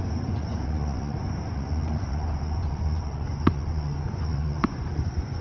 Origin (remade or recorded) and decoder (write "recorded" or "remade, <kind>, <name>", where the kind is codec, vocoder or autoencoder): remade, vocoder, Vocos